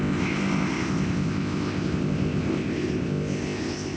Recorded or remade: remade